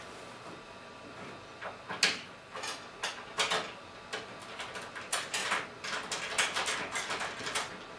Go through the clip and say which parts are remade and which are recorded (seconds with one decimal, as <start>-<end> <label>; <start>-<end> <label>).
0.0-8.0 recorded